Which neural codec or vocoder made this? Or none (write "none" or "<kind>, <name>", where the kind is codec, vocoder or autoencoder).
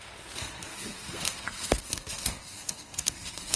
codec, SNAC